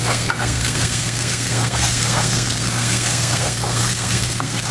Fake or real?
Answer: fake